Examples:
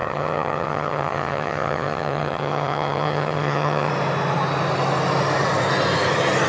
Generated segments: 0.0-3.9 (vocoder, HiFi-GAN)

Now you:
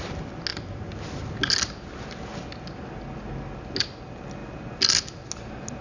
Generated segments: none

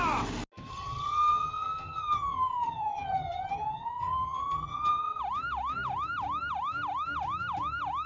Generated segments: 0.7-5.2 (vocoder, HiFi-GAN)